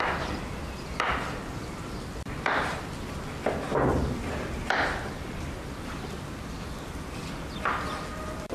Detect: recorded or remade recorded